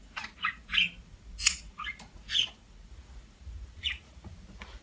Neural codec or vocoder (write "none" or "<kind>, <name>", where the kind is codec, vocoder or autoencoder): vocoder, Vocos